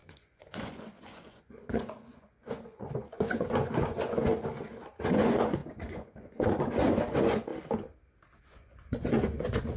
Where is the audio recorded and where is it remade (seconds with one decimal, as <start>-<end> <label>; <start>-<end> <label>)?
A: 0.0-4.3 remade; 4.3-5.0 recorded; 5.0-7.5 remade; 7.5-8.4 recorded; 8.4-9.8 remade